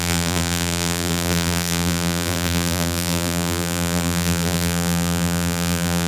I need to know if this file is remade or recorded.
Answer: remade